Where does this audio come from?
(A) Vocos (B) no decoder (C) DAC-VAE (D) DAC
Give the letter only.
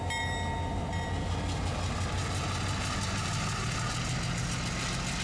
B